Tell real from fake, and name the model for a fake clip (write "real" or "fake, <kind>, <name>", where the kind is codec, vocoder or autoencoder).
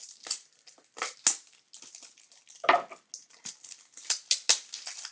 real